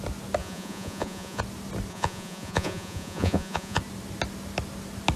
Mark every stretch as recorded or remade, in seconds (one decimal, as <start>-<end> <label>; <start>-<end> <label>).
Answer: 0.0-0.4 recorded; 0.4-1.4 remade; 1.4-1.9 recorded; 1.9-3.8 remade; 3.8-5.2 recorded